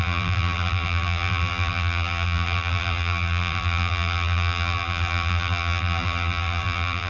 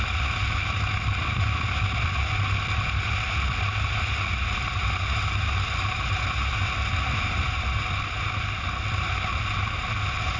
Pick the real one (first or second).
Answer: second